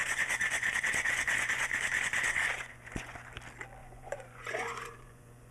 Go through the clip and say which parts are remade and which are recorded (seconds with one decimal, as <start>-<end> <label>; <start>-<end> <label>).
0.0-3.3 remade; 3.3-3.8 recorded; 3.8-5.5 remade